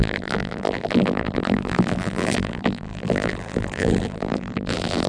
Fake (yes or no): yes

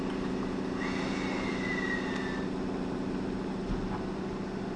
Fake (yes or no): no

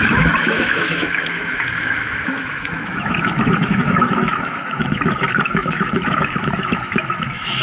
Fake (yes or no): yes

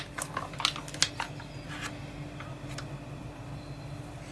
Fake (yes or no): no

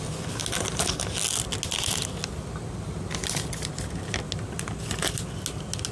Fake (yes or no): no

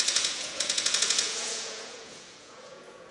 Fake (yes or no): yes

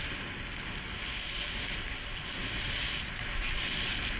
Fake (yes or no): no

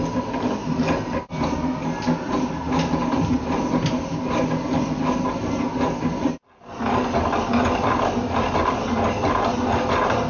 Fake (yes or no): no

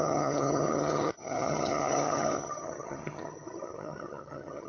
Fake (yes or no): yes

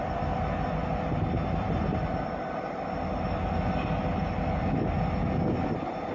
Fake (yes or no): no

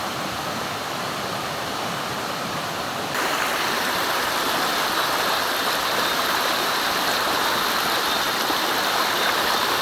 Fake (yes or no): no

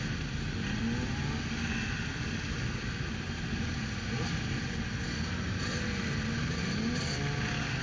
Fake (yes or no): no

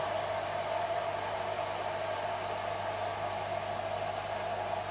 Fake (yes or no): no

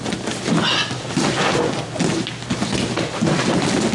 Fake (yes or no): no